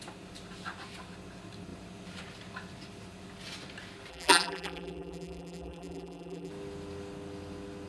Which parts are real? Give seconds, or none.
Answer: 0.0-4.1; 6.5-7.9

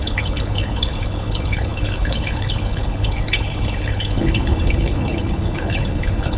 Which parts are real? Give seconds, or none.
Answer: none

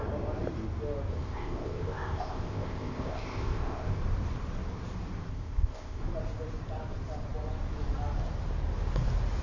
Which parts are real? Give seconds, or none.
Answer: 0.0-1.1; 4.0-5.3; 6.0-9.4